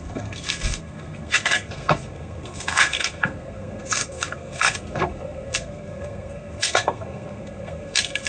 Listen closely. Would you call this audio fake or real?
fake